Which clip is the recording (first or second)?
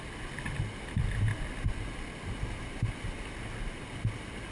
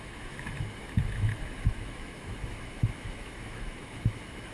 first